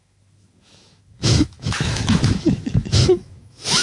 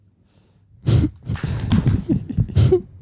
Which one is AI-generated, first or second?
first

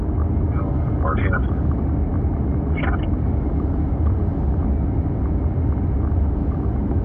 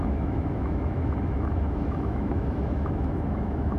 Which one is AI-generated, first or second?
second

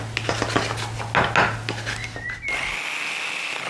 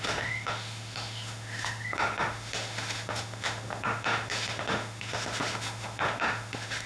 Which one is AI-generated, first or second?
second